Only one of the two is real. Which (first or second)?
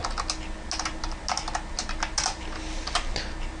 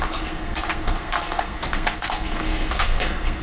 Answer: first